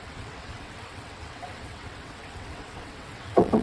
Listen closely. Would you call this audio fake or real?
fake